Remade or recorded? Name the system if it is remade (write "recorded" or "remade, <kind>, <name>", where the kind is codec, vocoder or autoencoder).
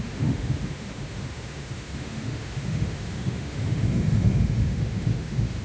remade, autoencoder, DAC-VAE